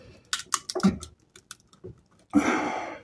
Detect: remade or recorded recorded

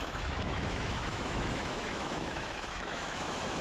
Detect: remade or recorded remade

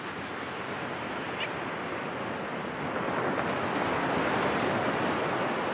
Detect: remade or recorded recorded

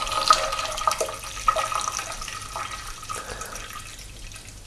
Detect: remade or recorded recorded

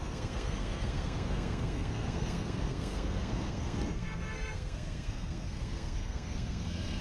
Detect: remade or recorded remade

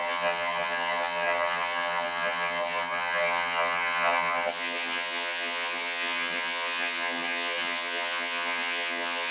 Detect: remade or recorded remade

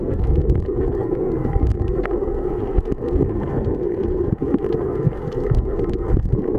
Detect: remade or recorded remade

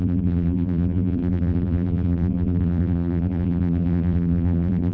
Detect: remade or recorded remade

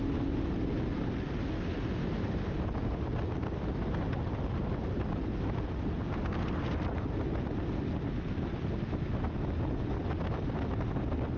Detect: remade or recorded recorded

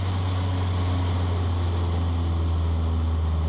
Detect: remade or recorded recorded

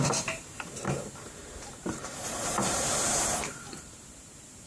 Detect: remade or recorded remade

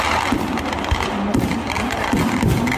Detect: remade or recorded recorded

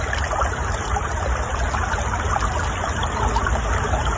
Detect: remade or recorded recorded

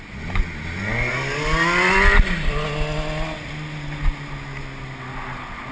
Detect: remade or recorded recorded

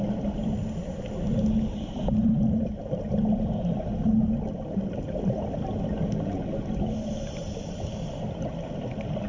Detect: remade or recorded recorded